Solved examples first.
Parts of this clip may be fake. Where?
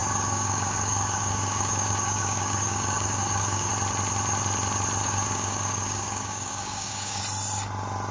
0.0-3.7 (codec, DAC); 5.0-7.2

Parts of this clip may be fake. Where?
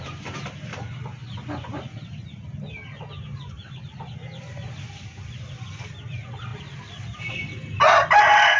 none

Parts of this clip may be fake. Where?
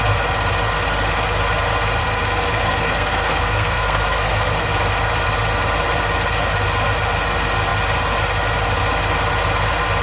2.0-4.7 (codec, SNAC)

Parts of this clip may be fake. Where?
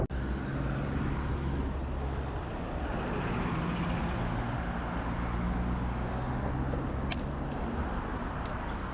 5.9-6.5 (autoencoder, DAC-VAE)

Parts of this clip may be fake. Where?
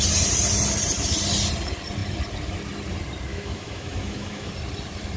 3.3-4.5 (autoencoder, DAC-VAE)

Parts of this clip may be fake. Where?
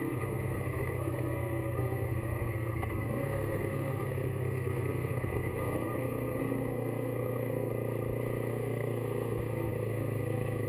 0.0-7.7 (codec, SNAC); 8.5-10.7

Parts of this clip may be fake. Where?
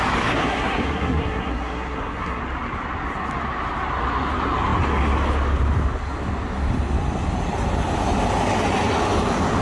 0.4-2.4 (codec, SNAC)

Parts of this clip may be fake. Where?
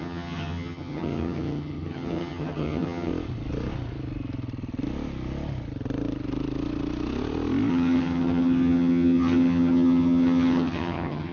0.0-3.1 (vocoder, HiFi-GAN); 7.7-11.3